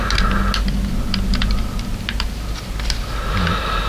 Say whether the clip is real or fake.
real